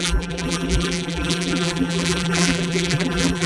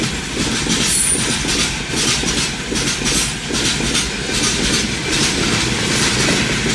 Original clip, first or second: second